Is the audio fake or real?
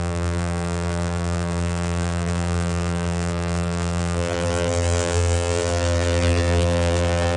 fake